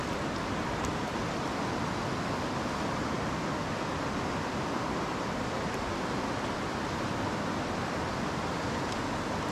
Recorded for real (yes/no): yes